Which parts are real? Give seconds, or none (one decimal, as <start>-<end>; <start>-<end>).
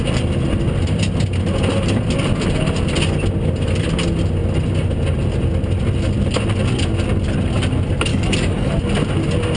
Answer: 0.0-8.1; 8.7-9.6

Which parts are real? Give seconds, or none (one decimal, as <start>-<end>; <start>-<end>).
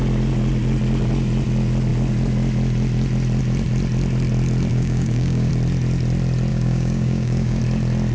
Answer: 0.0-4.7; 5.5-6.5; 7.6-8.1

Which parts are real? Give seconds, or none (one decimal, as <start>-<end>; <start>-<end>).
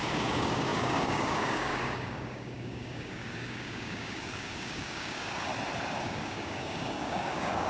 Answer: 5.5-6.0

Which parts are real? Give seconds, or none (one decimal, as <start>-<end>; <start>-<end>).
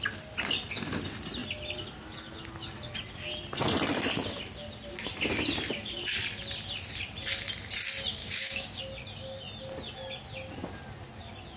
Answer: 0.0-8.2; 8.8-11.6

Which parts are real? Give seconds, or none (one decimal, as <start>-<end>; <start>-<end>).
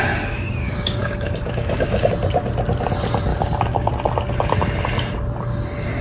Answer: 0.0-0.6; 2.1-3.3; 3.9-6.0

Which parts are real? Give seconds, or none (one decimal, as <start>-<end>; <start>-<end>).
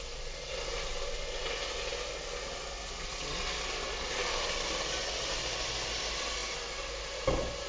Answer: 0.0-7.7